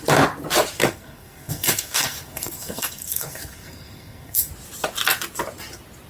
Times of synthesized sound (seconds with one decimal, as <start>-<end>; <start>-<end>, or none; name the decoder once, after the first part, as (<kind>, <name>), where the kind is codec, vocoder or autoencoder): 0.8-4.5 (codec, SNAC)